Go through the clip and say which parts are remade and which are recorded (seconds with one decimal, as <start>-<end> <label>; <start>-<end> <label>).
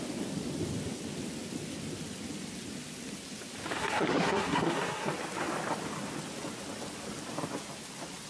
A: 0.0-3.8 recorded; 3.8-5.1 remade; 5.1-8.3 recorded